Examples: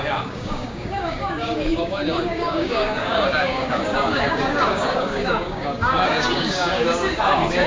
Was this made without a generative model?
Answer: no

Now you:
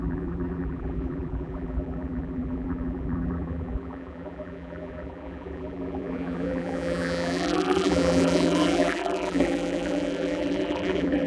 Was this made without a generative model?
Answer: no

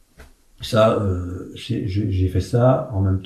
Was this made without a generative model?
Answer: yes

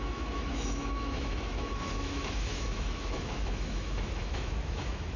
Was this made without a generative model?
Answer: no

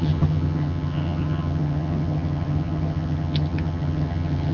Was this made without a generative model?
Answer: no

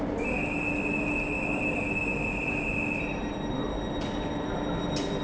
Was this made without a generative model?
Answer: yes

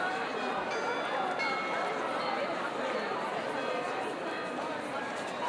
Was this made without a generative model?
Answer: no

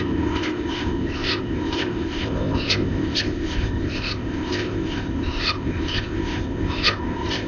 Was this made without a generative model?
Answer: no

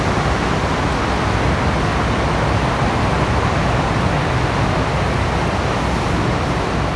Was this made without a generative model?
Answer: yes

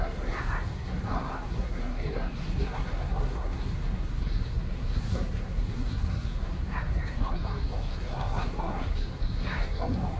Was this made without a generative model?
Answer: no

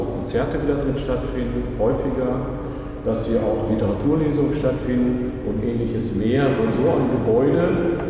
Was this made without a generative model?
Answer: yes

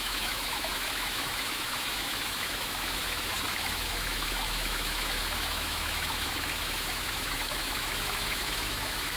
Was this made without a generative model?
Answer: no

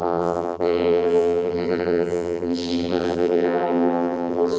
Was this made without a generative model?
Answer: no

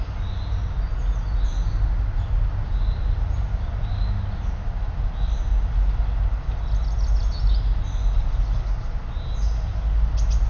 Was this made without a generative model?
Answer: yes